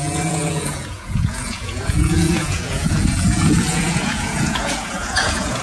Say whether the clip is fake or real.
fake